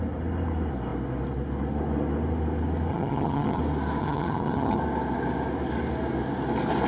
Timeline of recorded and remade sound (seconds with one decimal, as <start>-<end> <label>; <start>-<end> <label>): 0.0-2.9 recorded; 2.9-3.6 remade; 3.6-4.0 recorded; 4.0-4.8 remade; 4.8-6.9 recorded